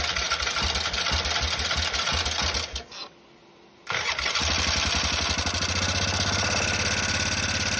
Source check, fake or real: real